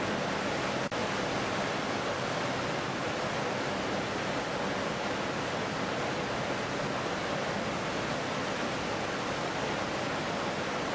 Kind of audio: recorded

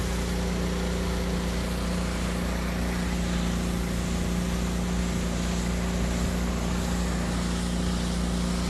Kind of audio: recorded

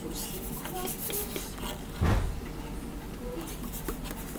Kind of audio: recorded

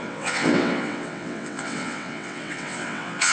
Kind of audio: remade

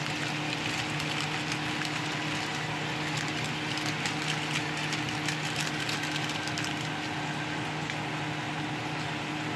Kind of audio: recorded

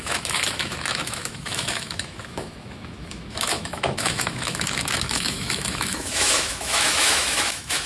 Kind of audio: remade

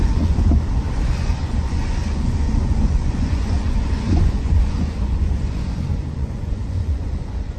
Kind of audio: remade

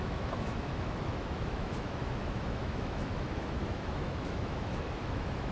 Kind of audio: remade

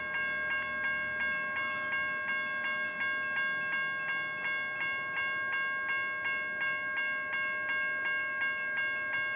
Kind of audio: recorded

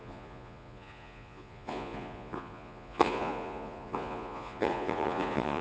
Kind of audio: remade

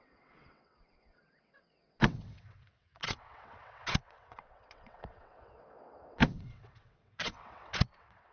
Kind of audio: remade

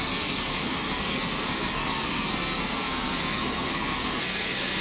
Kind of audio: remade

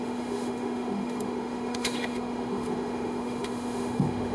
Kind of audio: remade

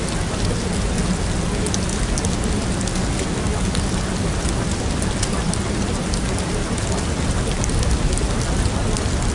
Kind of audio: recorded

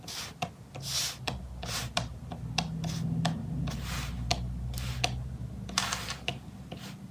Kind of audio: recorded